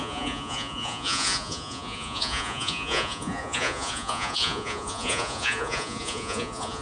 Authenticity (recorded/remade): remade